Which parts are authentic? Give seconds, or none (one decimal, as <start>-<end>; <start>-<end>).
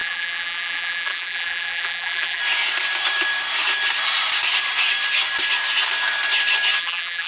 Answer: 2.4-6.8